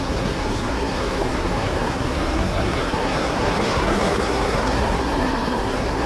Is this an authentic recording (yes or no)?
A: no